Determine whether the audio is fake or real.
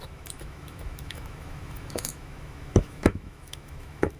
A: fake